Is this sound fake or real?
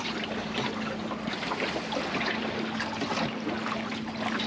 real